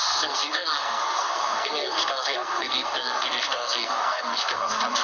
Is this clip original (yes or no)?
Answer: no